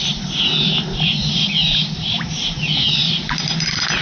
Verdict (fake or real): real